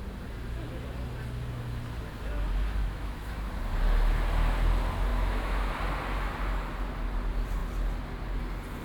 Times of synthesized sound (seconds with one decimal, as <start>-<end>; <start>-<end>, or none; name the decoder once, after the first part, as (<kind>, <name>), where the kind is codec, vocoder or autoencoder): 2.8-3.5 (autoencoder, DAC-VAE); 5.1-5.7